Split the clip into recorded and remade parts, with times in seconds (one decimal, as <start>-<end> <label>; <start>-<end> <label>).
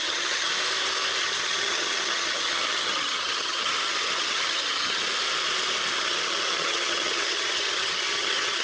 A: 0.0-0.5 remade; 0.5-1.2 recorded; 1.2-5.0 remade; 5.0-6.0 recorded; 6.0-8.6 remade